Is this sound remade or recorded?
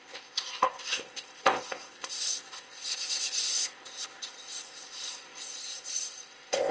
remade